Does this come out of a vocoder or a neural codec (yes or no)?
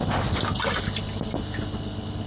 no